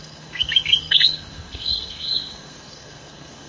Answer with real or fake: fake